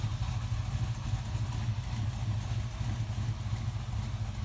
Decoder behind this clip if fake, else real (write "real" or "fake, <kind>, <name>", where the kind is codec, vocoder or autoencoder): real